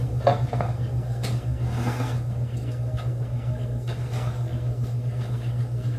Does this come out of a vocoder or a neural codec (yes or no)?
yes